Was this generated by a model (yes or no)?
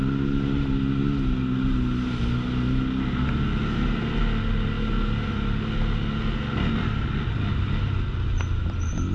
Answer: no